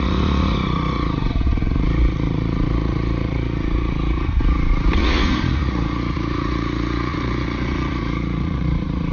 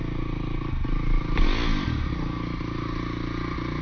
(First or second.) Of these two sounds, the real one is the second